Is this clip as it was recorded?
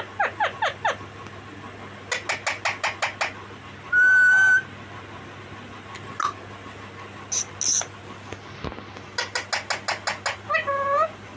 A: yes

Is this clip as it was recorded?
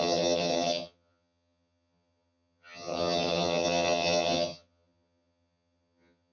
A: no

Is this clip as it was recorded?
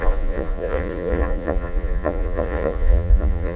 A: no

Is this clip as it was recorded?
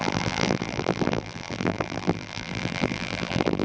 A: no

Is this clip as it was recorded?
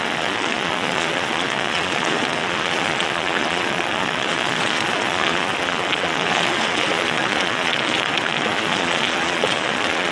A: no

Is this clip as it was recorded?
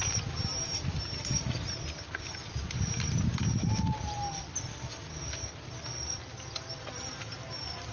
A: yes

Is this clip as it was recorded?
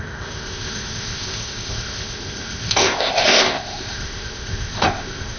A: no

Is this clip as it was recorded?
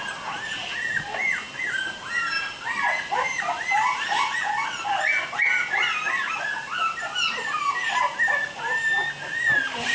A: yes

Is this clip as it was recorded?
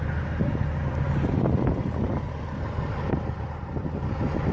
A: yes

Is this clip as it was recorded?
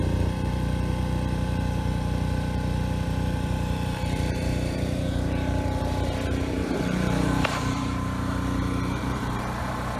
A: no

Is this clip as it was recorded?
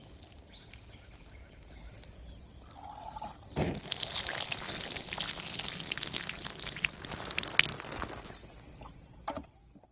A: yes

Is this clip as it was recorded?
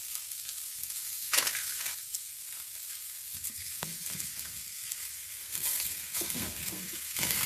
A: no